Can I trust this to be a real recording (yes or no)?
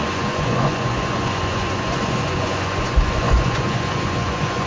no